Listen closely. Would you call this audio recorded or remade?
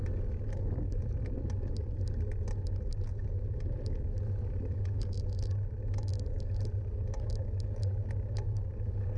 recorded